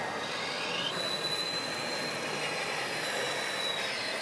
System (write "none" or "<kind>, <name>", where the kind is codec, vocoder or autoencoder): none